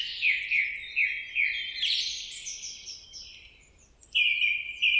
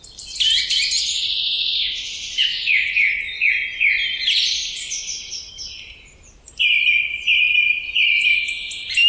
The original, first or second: first